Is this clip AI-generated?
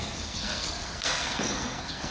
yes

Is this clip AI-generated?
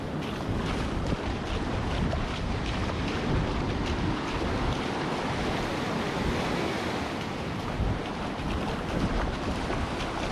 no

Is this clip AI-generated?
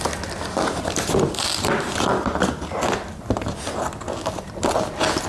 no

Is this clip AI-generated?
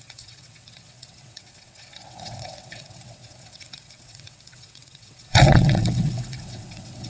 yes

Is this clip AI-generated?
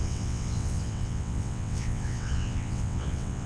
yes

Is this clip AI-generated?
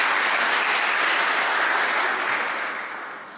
no